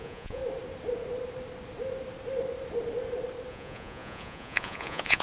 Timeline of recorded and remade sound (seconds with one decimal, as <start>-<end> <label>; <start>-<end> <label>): 0.0-0.4 remade; 0.4-3.5 recorded; 3.5-5.2 remade